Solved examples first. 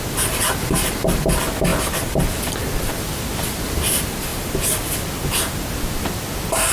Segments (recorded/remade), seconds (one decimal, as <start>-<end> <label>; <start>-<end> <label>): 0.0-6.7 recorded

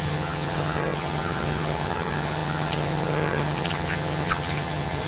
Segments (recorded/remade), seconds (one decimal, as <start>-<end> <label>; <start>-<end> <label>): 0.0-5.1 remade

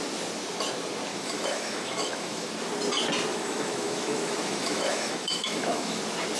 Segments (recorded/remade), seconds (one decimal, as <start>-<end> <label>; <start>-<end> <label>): 0.0-1.1 recorded; 1.1-2.5 remade; 2.5-3.3 recorded; 3.3-6.0 remade; 6.0-6.4 recorded